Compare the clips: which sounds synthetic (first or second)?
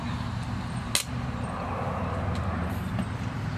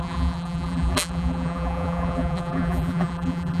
second